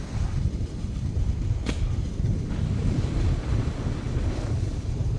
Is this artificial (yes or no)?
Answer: no